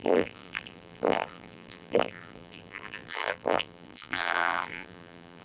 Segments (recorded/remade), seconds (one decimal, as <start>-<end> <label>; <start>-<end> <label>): 0.0-5.4 remade